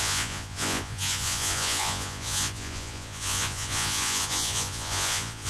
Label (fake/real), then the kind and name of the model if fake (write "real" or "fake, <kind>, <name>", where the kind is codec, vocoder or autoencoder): fake, vocoder, Vocos